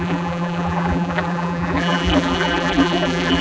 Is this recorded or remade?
remade